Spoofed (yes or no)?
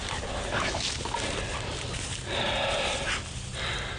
no